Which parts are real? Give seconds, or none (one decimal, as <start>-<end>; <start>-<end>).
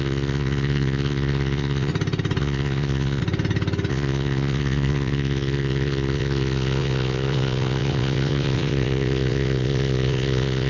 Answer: 1.9-2.4; 3.2-3.9